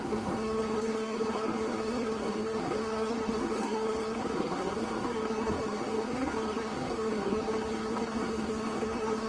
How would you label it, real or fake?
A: fake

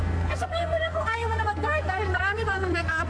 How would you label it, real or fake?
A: fake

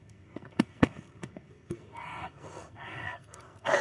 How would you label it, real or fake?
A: fake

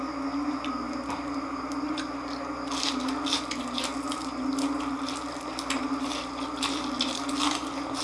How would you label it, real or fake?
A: real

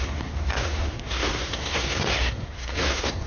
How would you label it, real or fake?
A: fake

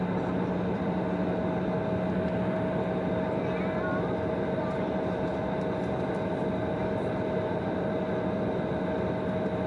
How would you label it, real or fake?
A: real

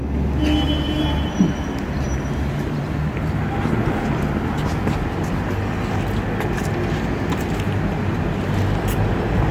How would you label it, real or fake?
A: real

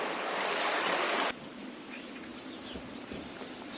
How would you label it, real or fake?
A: real